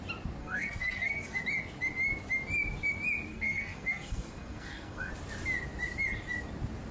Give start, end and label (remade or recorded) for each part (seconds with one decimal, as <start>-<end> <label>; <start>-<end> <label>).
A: 0.0-0.4 recorded; 0.4-1.4 remade; 1.4-3.3 recorded; 3.3-5.1 remade; 5.1-6.9 recorded